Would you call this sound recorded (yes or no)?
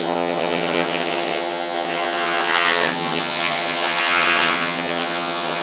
no